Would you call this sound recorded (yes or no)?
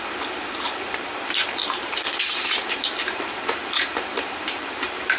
no